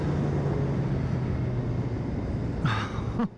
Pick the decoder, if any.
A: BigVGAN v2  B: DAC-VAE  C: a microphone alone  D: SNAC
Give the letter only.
C